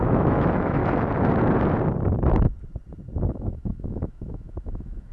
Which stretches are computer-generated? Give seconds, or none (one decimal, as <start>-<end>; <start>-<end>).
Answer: 0.0-0.8; 3.2-5.1